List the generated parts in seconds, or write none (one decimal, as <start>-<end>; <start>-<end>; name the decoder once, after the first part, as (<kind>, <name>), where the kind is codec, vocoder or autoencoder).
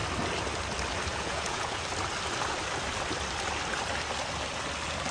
1.1-1.8 (vocoder, Vocos)